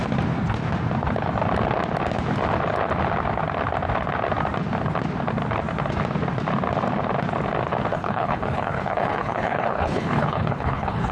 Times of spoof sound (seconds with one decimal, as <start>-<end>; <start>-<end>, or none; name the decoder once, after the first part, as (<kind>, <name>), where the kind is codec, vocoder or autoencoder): 7.9-11.1 (codec, HILCodec)